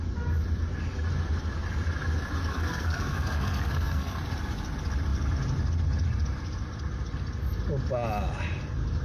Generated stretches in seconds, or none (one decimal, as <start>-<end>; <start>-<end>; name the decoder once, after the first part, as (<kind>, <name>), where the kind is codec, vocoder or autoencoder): 2.5-4.1 (codec, SNAC)